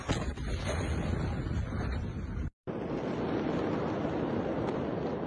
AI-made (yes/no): no